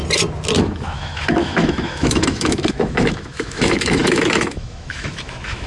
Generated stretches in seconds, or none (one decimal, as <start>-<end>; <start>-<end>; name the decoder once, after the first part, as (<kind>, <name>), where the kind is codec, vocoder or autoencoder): 0.6-5.7 (autoencoder, DAC-VAE)